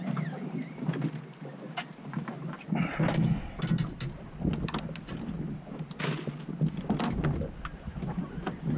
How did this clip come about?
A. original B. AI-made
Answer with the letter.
A